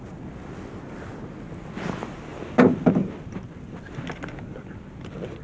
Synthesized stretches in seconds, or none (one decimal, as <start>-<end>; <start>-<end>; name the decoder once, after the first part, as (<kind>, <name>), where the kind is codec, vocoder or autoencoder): none